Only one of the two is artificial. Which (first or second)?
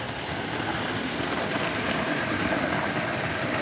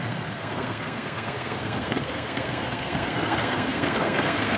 second